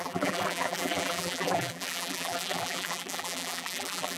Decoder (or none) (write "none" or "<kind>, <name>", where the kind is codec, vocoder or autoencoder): vocoder, BigVGAN v2